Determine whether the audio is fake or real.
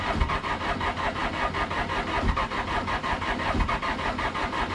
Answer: real